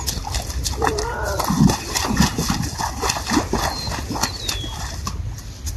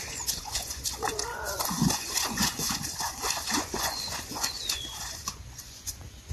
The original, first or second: first